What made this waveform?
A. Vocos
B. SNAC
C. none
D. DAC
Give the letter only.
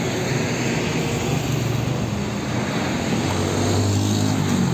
C